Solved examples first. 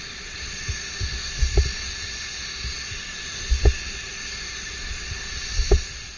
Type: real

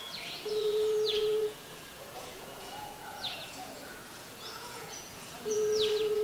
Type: fake